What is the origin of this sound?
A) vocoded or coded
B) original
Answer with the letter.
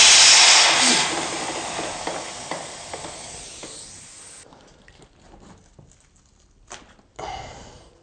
B